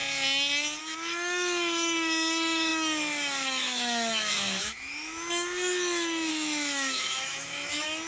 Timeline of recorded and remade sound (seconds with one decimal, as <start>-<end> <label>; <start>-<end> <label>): 0.0-0.8 recorded; 0.8-8.1 remade